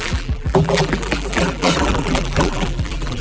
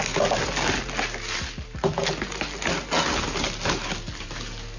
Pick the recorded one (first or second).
second